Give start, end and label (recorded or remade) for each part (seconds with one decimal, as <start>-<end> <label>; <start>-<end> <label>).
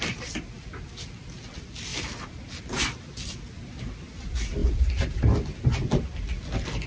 0.0-6.9 recorded